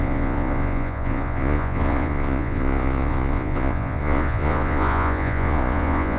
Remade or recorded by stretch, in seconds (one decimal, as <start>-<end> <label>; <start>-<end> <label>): 0.0-6.2 remade